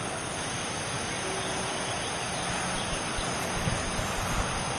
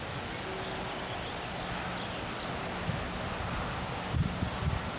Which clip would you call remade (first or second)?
first